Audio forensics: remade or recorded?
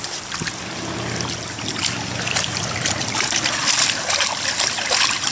recorded